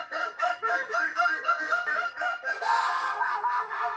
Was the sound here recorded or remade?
remade